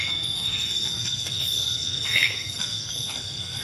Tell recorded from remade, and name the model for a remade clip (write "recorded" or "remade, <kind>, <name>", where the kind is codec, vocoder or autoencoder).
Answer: remade, codec, SNAC